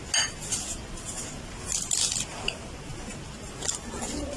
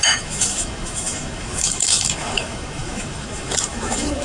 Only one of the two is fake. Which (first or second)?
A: second